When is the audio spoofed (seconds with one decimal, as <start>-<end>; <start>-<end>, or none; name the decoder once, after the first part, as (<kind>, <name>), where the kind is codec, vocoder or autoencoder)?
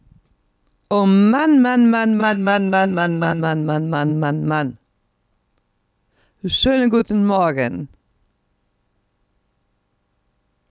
2.2-3.4 (codec, ZipCodec)